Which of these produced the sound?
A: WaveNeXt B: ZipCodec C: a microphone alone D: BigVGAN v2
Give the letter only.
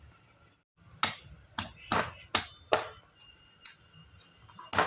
C